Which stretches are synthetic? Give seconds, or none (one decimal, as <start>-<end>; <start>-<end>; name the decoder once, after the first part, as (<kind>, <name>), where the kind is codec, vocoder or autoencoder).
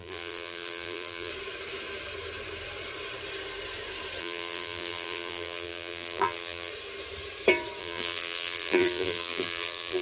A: 0.0-1.3 (vocoder, BigVGAN v2); 4.2-6.7; 7.8-10.0